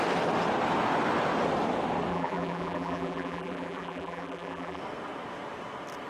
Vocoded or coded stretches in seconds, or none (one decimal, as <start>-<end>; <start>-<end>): 2.1-4.8